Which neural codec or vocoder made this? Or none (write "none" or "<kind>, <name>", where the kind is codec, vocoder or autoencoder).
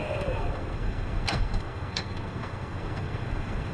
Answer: codec, SNAC